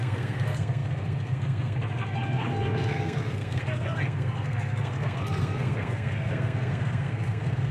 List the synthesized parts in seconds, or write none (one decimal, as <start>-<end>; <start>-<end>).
0.0-7.7